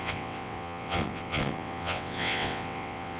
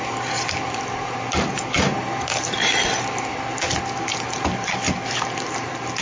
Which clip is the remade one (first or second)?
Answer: first